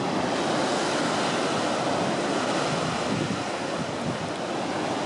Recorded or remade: recorded